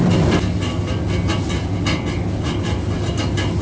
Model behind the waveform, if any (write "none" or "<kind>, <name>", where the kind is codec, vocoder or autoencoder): none